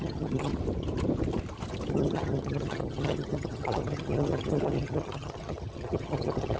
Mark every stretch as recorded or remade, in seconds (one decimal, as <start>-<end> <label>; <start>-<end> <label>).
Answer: 0.0-0.5 remade; 0.5-1.9 recorded; 1.9-6.6 remade